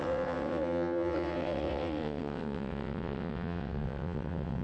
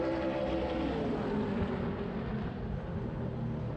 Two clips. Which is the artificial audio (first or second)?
first